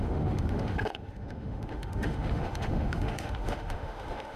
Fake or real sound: fake